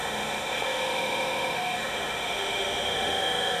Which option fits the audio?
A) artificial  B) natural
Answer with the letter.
A